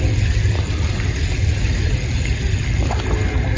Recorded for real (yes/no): yes